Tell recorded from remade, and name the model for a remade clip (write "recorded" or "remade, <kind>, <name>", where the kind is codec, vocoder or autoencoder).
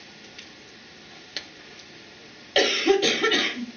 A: recorded